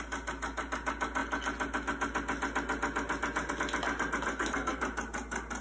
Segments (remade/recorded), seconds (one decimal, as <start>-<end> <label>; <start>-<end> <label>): 0.0-4.3 recorded; 4.3-4.8 remade; 4.8-5.6 recorded